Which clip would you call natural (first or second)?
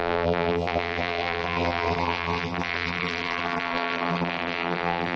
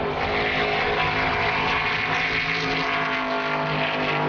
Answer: second